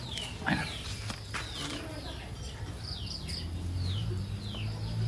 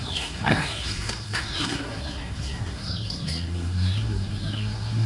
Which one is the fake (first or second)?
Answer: second